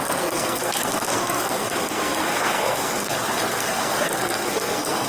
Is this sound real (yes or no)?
no